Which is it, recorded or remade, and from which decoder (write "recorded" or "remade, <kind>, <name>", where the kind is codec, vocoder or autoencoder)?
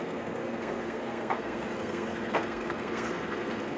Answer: remade, codec, SNAC